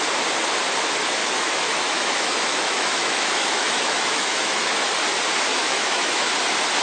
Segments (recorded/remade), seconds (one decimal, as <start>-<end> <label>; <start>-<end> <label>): 0.0-1.2 recorded; 1.2-4.9 remade; 4.9-5.5 recorded; 5.5-6.3 remade; 6.3-6.8 recorded